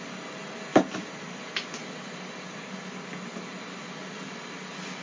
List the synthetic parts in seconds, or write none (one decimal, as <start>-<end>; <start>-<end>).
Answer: none